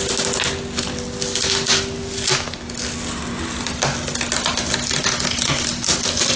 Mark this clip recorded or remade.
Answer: recorded